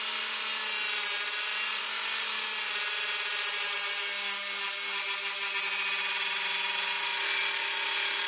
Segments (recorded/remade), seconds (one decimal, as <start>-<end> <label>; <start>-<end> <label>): 0.0-8.3 recorded